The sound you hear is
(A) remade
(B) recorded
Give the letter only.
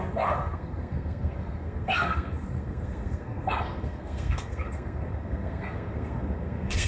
A